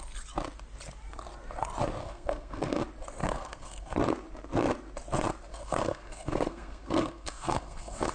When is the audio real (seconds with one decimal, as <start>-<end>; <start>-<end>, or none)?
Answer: 0.0-2.0; 2.8-3.2; 4.0-5.5